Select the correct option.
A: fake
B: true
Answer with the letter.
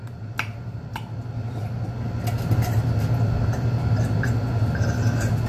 B